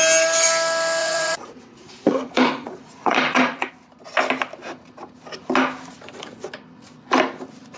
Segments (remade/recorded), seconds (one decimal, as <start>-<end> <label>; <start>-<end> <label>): 0.0-1.0 recorded; 1.0-3.7 remade; 3.7-7.8 recorded